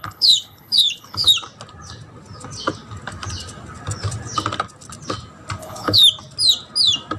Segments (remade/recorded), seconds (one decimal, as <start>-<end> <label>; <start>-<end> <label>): 0.0-1.3 remade; 1.3-5.6 recorded; 5.6-6.0 remade; 6.0-7.2 recorded